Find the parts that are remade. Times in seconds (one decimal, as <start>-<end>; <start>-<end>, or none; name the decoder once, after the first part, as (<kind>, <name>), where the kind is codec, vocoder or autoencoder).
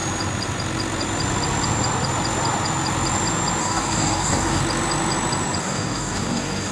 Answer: 3.6-4.6 (codec, DAC); 5.6-6.7